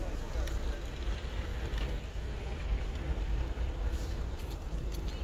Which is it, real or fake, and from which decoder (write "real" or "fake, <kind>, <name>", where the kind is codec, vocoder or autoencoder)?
real